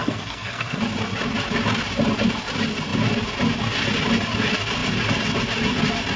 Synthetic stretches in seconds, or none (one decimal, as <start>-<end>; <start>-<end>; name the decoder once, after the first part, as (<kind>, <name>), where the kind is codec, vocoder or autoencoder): 0.0-0.8 (codec, SNAC)